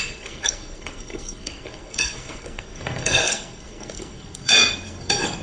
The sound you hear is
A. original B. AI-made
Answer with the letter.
B